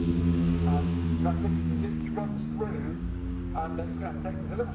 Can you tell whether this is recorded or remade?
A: remade